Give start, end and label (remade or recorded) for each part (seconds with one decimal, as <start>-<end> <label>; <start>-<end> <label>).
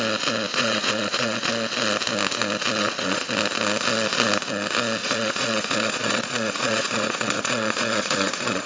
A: 0.0-0.5 recorded; 0.5-1.5 remade; 1.5-2.8 recorded; 2.8-3.3 remade; 3.3-5.0 recorded; 5.0-8.7 remade